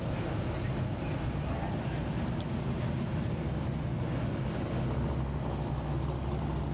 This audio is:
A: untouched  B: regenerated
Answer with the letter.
A